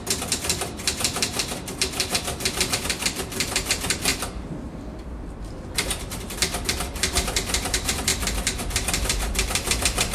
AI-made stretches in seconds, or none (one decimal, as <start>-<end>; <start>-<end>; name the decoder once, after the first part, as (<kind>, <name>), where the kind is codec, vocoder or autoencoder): 0.0-6.4 (vocoder, BigVGAN v2); 7.1-8.1; 8.6-10.1